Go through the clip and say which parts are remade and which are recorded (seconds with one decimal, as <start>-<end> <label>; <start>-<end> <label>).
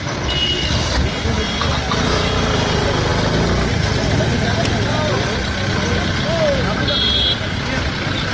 0.0-8.3 recorded